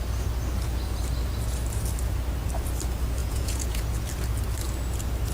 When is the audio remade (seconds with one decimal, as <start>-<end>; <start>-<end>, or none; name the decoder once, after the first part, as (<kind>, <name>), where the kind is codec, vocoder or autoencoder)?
3.2-3.8 (vocoder, Vocos)